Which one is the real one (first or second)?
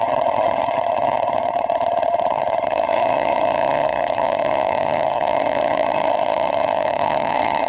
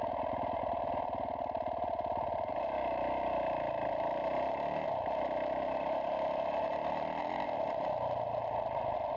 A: second